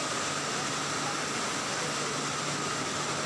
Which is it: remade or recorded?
recorded